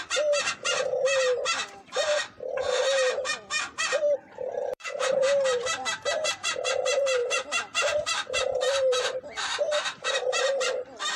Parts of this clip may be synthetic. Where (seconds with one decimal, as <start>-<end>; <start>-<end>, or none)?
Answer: 4.6-6.1; 7.2-10.1